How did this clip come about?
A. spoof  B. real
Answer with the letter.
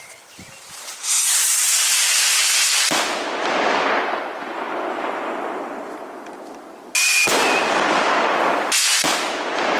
B